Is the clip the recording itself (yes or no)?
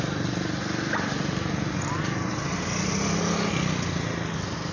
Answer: yes